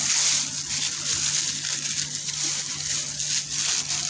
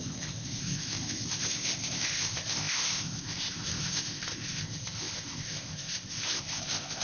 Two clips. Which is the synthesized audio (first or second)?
second